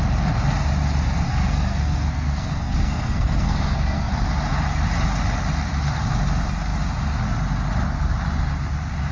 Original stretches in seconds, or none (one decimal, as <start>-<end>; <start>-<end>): 0.0-1.3; 4.1-9.1